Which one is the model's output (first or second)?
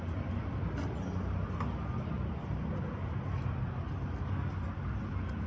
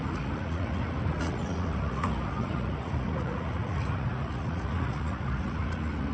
second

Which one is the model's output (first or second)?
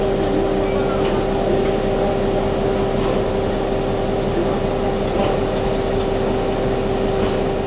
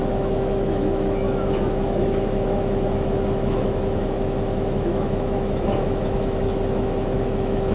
second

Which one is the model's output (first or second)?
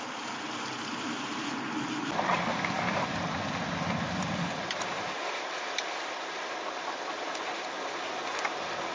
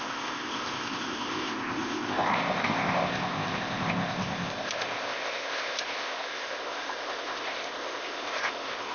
second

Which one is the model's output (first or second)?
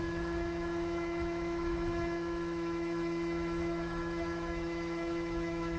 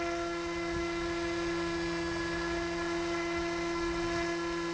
first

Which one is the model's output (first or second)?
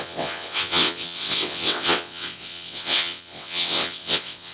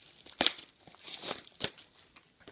first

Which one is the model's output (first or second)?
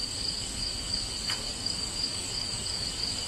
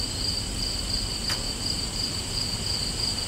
first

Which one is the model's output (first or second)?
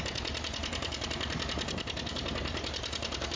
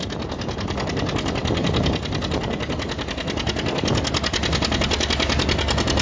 first